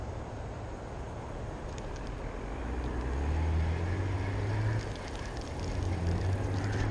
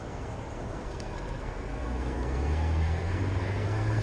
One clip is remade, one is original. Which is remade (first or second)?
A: second